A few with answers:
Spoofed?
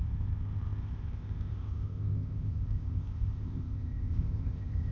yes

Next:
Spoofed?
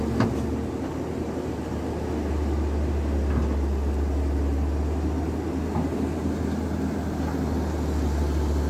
no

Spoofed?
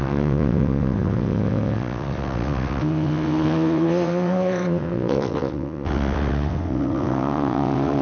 yes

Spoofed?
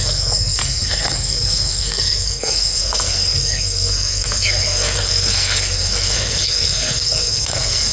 yes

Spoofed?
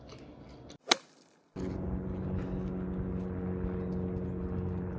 no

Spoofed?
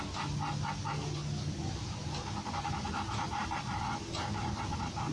no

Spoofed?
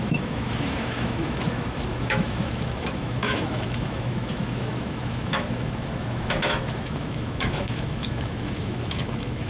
yes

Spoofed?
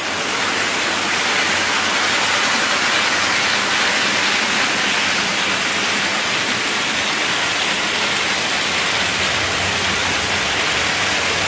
no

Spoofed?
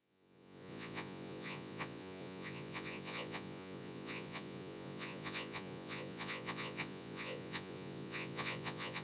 yes